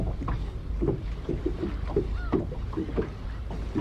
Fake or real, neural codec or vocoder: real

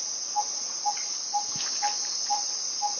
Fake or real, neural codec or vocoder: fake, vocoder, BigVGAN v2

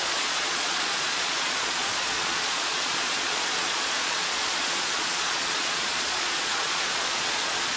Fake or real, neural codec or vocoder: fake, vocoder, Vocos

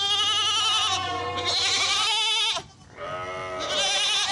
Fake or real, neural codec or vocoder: real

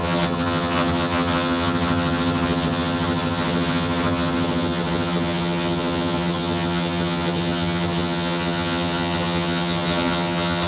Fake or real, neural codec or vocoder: fake, vocoder, HiFi-GAN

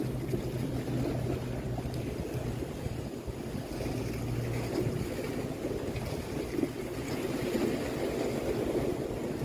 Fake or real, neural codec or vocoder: real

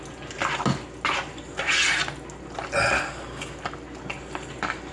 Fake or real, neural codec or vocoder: real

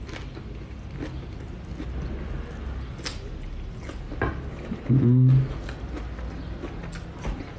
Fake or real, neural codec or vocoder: real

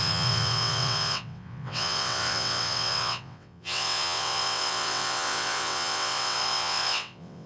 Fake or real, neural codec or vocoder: fake, vocoder, WaveNeXt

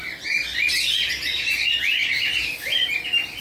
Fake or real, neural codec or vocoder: real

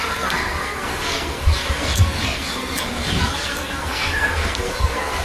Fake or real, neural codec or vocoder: fake, codec, SNAC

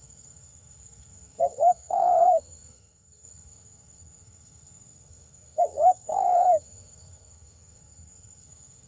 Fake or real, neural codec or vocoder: fake, codec, SNAC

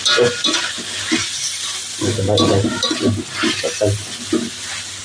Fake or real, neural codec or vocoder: real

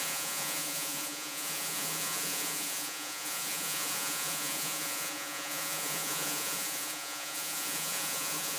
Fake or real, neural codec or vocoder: fake, vocoder, Vocos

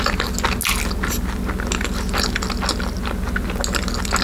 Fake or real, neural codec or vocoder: real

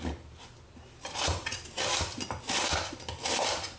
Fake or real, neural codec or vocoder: real